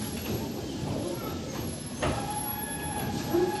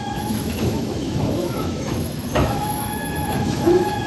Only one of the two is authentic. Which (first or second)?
first